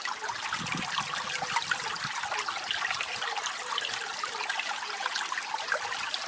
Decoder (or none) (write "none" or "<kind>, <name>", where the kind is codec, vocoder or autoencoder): none